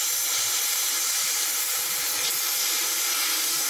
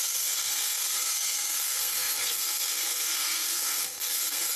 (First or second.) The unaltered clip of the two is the first